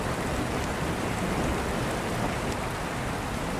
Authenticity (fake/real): real